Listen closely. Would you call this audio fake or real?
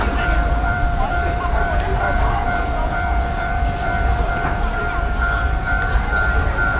fake